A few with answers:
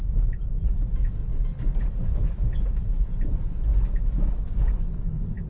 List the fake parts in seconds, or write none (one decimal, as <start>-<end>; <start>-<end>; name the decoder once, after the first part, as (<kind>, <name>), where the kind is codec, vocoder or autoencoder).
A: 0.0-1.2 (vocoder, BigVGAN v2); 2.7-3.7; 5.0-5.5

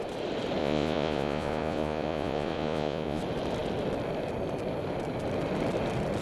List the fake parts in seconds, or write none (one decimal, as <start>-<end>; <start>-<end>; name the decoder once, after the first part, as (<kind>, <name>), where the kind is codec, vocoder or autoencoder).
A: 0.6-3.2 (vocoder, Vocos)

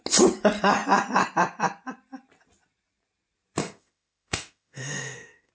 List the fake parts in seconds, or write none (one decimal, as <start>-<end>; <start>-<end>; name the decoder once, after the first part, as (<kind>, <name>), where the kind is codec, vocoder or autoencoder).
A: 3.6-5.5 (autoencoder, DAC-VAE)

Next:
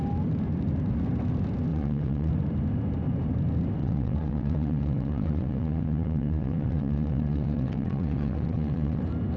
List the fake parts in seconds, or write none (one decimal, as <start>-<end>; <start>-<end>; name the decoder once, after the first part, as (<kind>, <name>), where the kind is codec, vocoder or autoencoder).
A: 1.7-2.3 (vocoder, WaveNeXt); 3.8-9.0